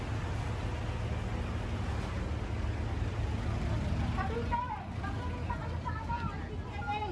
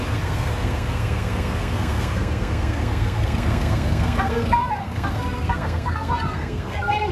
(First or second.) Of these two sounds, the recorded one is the first